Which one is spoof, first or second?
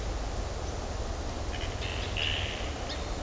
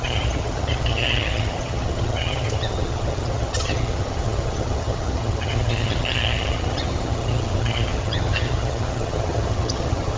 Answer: second